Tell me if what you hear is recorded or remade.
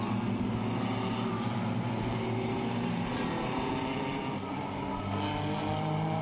recorded